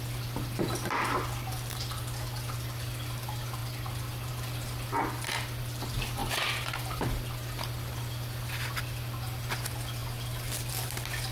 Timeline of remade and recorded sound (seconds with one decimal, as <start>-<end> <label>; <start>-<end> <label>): 0.0-6.2 recorded; 6.2-7.0 remade; 7.0-10.0 recorded; 10.0-10.7 remade; 10.7-11.3 recorded

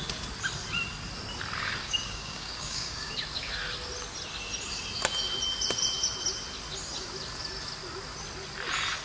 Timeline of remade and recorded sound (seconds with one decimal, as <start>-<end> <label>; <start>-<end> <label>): 0.0-1.8 recorded; 1.8-3.1 remade; 3.1-9.0 recorded